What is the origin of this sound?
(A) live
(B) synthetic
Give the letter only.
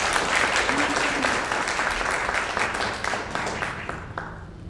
A